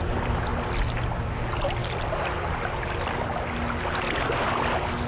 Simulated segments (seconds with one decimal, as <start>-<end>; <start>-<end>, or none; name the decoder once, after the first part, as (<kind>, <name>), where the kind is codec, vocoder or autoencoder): none

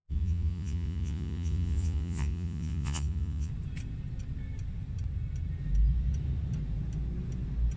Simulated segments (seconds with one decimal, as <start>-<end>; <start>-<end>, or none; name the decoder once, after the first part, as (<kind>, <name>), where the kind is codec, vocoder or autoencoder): 0.0-3.5 (vocoder, Vocos)

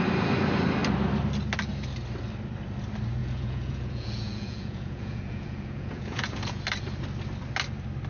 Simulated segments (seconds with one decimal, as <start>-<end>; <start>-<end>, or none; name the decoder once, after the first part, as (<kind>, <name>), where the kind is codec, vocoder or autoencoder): 3.2-6.6 (vocoder, Vocos)